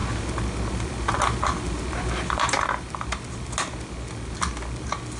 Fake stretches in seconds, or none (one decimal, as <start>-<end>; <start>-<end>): none